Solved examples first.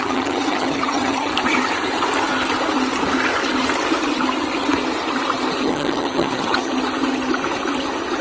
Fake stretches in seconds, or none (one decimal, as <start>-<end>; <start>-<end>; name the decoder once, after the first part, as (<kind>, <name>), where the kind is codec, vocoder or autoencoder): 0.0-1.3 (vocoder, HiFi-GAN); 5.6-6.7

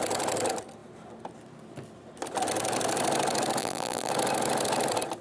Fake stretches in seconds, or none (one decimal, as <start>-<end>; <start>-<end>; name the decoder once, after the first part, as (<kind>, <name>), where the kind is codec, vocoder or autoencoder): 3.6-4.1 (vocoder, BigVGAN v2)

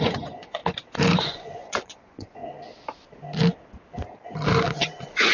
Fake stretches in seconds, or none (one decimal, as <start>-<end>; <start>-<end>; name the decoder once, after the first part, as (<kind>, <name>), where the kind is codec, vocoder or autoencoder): 0.0-0.6 (vocoder, Vocos); 1.1-2.4; 4.8-5.3

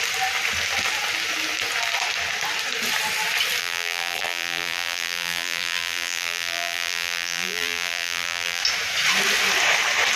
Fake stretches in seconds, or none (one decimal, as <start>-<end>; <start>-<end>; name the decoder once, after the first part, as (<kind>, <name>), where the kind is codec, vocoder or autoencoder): 3.6-8.6 (vocoder, BigVGAN v2)

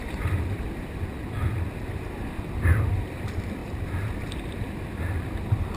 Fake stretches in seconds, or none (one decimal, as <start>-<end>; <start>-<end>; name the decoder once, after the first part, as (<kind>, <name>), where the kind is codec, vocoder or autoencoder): none

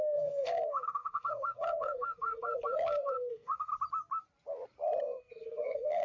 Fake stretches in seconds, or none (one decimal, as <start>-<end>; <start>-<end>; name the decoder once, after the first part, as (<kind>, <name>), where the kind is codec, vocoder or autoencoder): 0.0-3.7 (codec, SNAC); 5.0-6.0